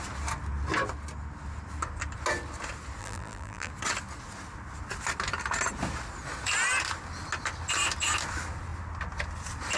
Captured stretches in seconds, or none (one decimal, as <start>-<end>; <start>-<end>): 0.0-3.0; 3.7-9.8